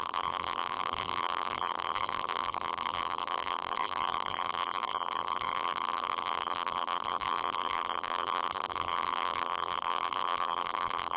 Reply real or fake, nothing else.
fake